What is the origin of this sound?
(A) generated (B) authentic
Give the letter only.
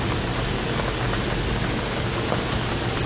B